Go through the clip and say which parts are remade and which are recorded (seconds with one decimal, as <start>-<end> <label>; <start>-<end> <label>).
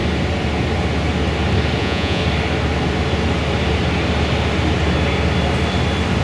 0.0-1.8 recorded; 1.8-2.2 remade; 2.2-6.2 recorded